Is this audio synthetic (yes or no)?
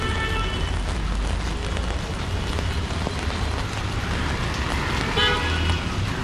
no